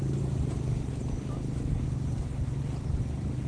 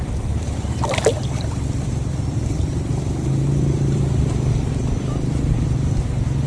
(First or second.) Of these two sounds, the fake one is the second